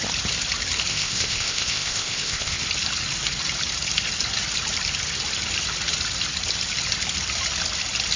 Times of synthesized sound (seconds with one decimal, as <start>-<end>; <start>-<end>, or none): 0.9-2.6